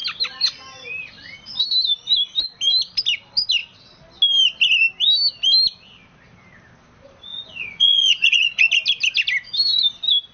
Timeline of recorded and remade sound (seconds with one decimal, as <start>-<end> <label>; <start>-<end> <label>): 0.0-7.3 recorded; 7.3-8.7 remade; 8.7-10.3 recorded